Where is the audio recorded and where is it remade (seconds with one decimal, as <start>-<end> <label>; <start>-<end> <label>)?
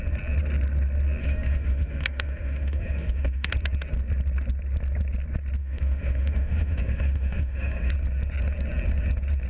0.0-1.2 recorded; 1.2-3.5 remade; 3.5-5.6 recorded; 5.6-7.9 remade; 7.9-9.5 recorded